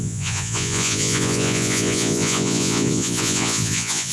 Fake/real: fake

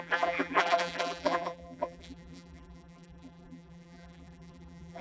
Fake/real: fake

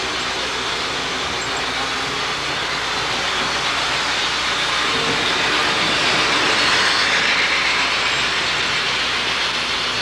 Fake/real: real